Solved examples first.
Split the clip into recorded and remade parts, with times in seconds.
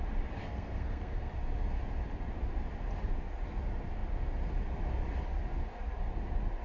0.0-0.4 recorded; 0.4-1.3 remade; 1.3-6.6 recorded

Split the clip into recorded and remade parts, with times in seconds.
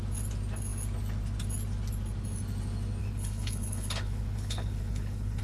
0.0-3.0 recorded; 3.0-5.4 remade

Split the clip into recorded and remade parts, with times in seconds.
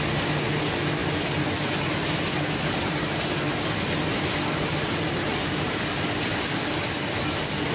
0.0-4.1 recorded; 4.1-5.8 remade; 5.8-7.7 recorded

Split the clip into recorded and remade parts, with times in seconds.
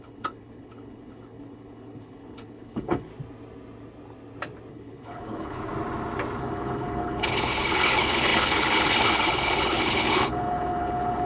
0.0-3.1 remade; 3.1-4.7 recorded; 4.7-5.6 remade; 5.6-6.4 recorded; 6.4-11.3 remade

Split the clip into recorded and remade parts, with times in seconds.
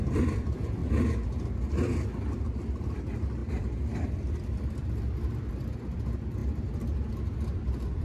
0.0-0.8 remade; 0.8-1.5 recorded; 1.5-8.0 remade